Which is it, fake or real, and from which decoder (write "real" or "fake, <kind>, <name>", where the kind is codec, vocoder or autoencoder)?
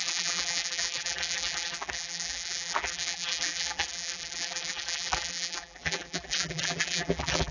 fake, vocoder, BigVGAN v2